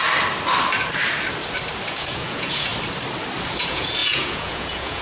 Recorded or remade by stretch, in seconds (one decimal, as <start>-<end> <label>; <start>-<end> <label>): 0.0-1.9 recorded; 1.9-2.7 remade; 2.7-3.6 recorded; 3.6-5.0 remade